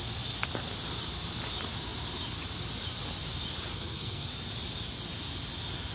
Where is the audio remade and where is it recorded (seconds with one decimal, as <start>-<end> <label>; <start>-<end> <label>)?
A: 0.0-3.7 recorded; 3.7-4.3 remade; 4.3-5.9 recorded